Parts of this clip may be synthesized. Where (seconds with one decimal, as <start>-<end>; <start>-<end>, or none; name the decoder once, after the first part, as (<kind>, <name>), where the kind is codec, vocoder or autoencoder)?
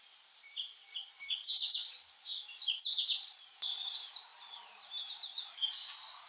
0.0-1.8 (vocoder, BigVGAN v2); 2.3-6.3